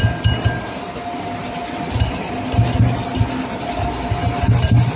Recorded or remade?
recorded